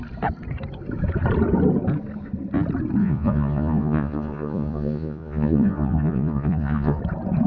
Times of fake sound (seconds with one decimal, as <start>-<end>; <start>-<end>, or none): 3.0-7.0